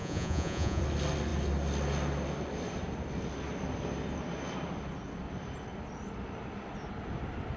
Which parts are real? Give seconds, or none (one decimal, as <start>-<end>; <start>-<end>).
0.8-7.6